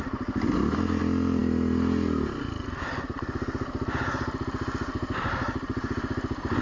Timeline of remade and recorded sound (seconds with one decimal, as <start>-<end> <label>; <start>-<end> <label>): 0.0-6.6 recorded